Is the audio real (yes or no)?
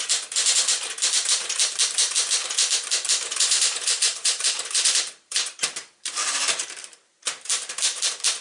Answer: no